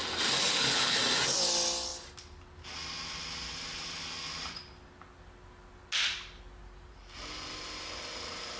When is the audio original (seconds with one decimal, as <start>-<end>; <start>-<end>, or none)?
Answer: 0.0-0.4; 1.0-8.6